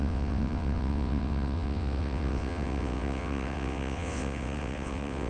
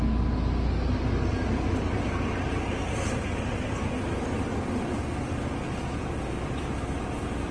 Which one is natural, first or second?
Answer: second